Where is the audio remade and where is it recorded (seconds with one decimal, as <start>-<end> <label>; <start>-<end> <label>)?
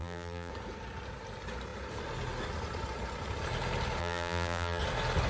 0.0-0.5 remade; 0.5-4.0 recorded; 4.0-4.8 remade; 4.8-5.3 recorded